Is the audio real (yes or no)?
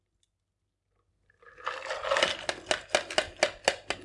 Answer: yes